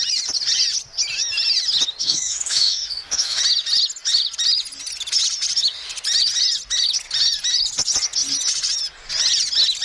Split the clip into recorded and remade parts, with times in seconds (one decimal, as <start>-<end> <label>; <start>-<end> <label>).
0.0-2.0 recorded; 2.0-3.4 remade; 3.4-9.8 recorded